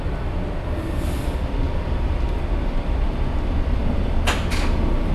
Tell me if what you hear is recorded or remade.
recorded